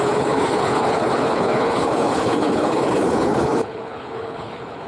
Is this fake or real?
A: fake